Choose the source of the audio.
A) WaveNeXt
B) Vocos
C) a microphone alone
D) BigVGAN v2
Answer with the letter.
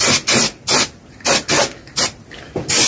C